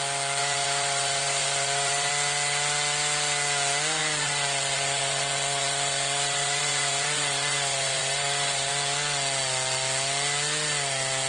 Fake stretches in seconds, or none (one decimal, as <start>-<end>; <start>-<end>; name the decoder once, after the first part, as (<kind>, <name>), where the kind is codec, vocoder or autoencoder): 0.4-2.1 (vocoder, Vocos); 4.0-8.7